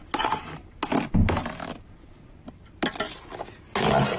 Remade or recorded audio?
recorded